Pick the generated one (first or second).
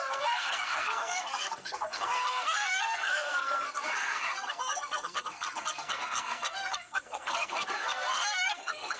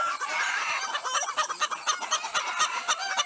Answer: first